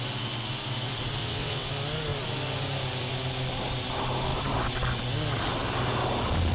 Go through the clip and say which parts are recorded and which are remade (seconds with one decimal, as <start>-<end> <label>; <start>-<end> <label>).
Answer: 0.0-1.2 recorded; 1.2-1.7 remade; 1.7-6.5 recorded